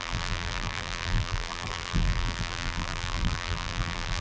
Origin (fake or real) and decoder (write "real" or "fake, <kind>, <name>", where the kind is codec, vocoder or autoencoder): fake, vocoder, BigVGAN v2